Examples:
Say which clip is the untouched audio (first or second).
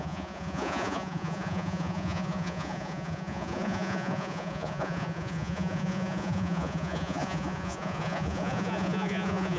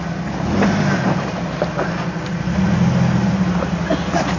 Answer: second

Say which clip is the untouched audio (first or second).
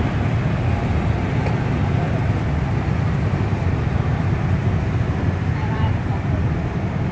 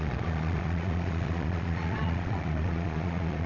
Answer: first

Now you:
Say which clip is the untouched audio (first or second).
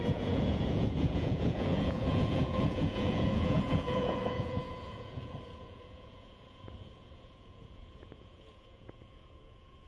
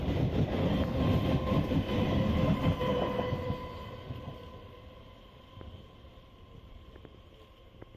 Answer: second